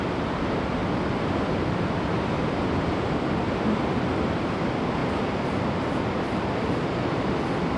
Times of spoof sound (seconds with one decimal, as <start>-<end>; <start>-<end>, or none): 0.8-4.1